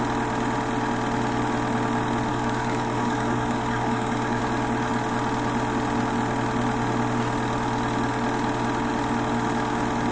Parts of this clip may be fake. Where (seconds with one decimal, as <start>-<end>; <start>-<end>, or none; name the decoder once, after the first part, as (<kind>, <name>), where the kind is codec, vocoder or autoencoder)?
2.3-4.4 (codec, DAC)